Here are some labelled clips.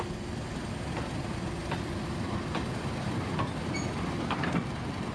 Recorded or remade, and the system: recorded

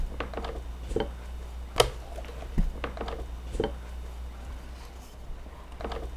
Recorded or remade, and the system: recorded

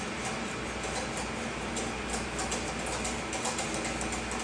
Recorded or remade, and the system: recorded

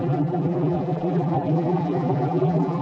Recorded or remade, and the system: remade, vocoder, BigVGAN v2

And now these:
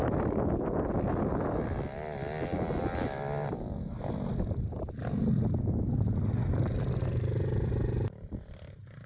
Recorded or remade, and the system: recorded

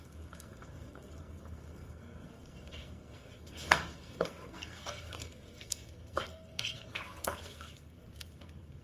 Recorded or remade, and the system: remade, codec, SNAC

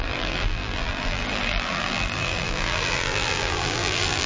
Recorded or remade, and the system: remade, vocoder, BigVGAN v2